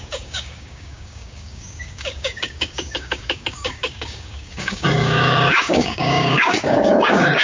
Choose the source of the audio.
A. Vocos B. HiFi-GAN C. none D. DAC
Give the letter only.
D